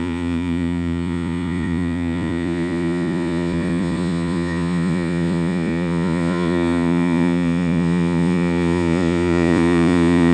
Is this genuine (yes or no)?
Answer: no